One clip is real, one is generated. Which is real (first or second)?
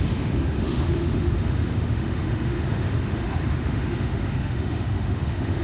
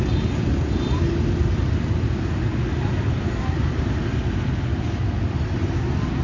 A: second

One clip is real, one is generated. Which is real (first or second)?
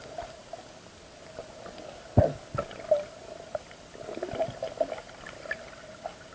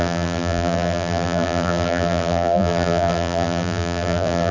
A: first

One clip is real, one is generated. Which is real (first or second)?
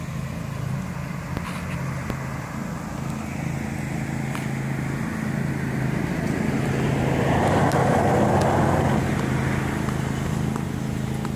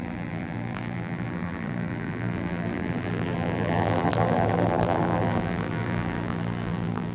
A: first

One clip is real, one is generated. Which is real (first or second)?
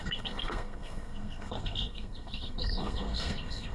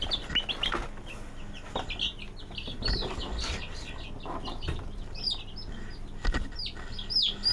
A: second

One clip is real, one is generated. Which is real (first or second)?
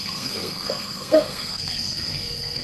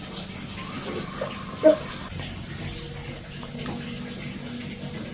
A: second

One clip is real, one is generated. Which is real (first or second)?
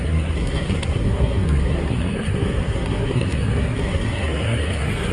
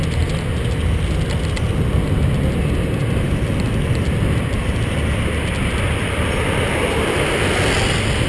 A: second